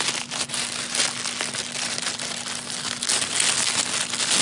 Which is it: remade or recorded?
recorded